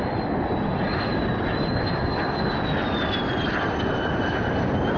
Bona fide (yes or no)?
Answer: yes